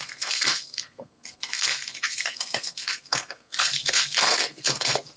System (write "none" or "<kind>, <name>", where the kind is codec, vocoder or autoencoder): codec, SNAC